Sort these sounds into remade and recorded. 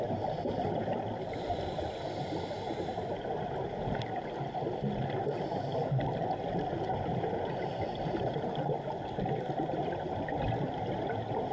recorded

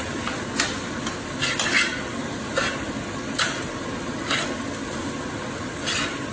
recorded